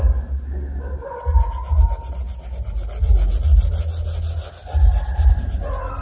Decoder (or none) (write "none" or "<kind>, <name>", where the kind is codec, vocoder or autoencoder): none